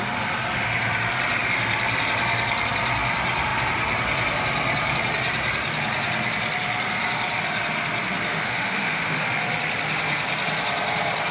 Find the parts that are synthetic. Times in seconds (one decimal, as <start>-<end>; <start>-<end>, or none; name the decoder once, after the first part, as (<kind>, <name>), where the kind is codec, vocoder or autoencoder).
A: 8.3-9.2 (autoencoder, DAC-VAE)

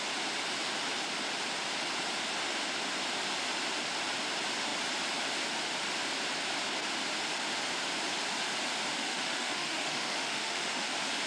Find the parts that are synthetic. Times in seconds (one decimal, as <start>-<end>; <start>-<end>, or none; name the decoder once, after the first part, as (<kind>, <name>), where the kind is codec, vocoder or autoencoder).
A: 8.9-10.9 (autoencoder, DAC-VAE)

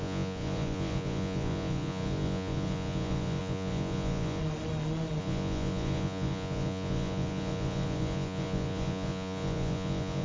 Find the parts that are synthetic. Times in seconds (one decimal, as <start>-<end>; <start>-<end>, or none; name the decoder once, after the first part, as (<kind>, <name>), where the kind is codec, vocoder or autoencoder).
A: 0.0-4.4 (vocoder, Vocos); 5.2-10.2

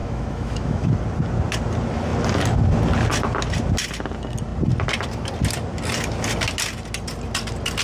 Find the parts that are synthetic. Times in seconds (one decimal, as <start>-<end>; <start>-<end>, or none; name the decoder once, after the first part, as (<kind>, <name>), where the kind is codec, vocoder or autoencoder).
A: 0.0-0.9 (autoencoder, DAC-VAE)